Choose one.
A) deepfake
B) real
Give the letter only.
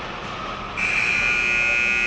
B